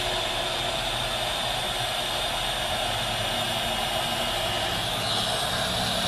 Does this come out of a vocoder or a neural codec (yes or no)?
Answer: no